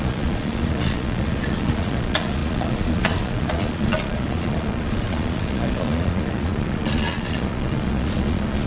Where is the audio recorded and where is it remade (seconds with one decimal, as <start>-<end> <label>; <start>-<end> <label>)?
0.0-8.7 remade